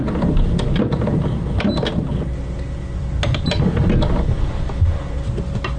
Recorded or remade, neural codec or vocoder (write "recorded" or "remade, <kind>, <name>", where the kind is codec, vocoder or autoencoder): recorded